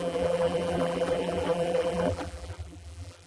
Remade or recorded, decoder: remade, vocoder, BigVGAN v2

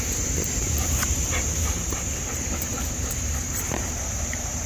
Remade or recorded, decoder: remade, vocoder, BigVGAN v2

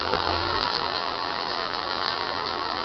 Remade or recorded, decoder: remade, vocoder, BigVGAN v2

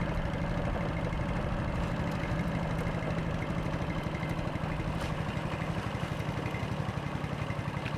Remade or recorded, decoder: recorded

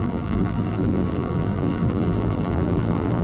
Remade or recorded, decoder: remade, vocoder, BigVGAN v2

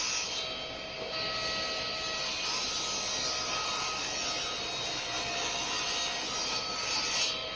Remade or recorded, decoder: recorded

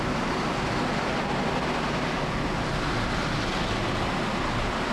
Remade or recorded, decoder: recorded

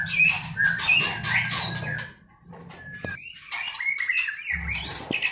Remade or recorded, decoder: recorded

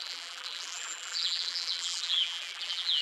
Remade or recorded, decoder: remade, vocoder, BigVGAN v2